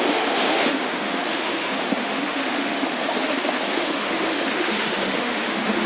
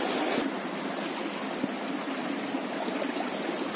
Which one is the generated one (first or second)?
first